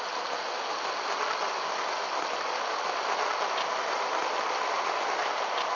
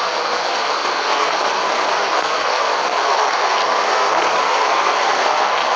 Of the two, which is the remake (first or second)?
second